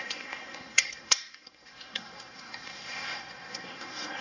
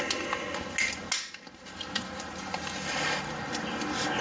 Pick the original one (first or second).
second